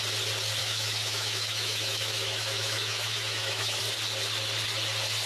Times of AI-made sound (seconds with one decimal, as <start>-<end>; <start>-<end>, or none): 0.6-3.8